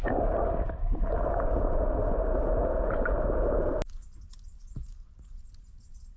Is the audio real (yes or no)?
yes